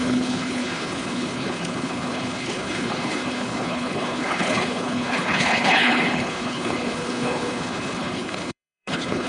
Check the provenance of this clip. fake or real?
fake